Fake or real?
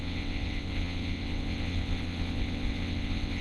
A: fake